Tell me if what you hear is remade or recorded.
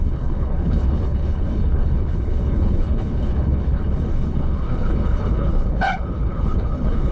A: remade